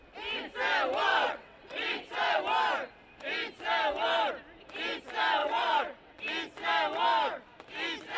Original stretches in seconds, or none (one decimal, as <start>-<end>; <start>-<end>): 0.0-1.1; 2.4-5.4; 6.2-8.2